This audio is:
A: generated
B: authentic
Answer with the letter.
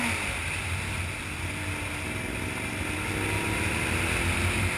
B